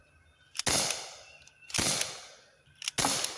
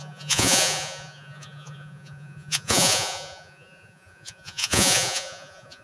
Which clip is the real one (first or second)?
first